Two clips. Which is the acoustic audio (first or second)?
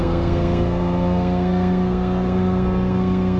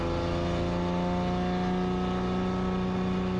second